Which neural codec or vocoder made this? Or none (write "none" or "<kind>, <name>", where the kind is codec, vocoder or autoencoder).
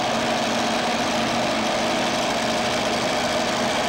none